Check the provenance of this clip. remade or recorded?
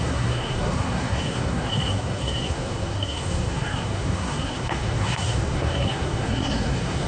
remade